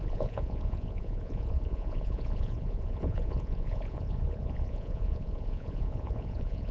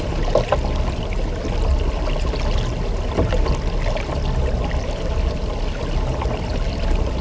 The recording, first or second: second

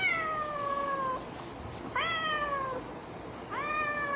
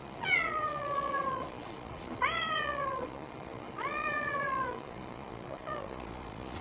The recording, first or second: first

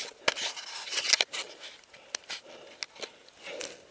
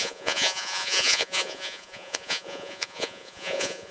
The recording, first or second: first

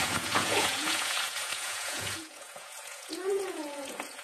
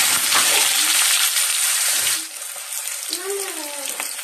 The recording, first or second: second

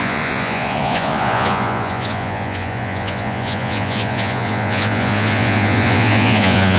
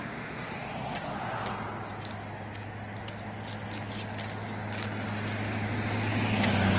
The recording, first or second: second